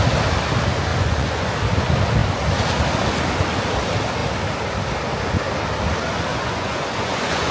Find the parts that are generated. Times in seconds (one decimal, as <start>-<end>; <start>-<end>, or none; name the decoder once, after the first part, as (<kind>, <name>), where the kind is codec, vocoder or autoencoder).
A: 0.9-1.5 (vocoder, Vocos); 6.3-7.5